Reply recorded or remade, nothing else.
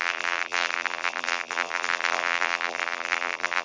remade